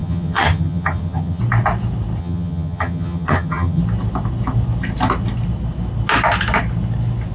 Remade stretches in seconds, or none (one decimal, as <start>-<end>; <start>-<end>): 0.0-1.4; 2.2-3.8